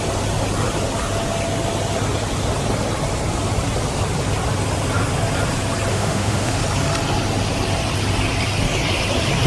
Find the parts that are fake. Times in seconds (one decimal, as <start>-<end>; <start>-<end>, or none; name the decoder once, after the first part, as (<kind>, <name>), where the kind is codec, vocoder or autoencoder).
5.9-6.6 (autoencoder, DAC-VAE)